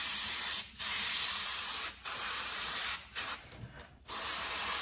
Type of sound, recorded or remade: remade